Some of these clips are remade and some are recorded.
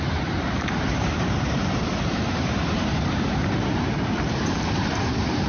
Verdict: remade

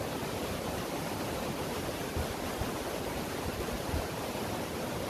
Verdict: remade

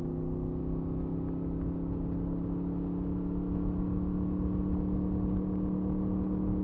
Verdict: recorded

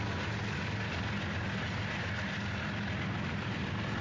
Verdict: recorded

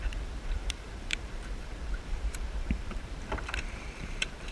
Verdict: remade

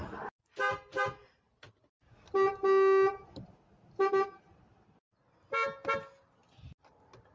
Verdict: recorded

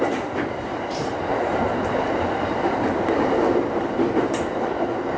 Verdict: remade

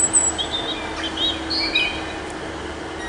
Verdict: recorded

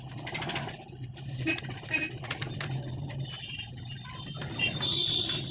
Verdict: recorded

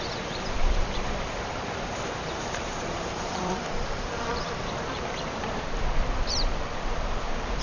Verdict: remade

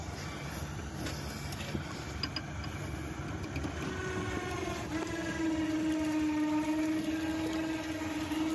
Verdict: recorded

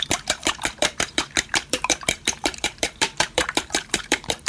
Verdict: remade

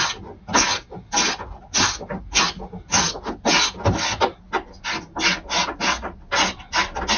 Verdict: recorded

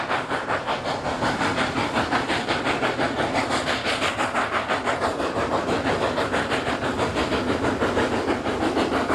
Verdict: recorded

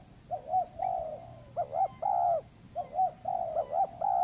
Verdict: recorded